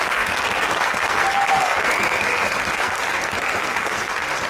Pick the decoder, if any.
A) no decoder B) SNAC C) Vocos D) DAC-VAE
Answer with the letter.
B